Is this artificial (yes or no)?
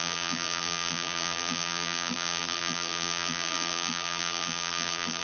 yes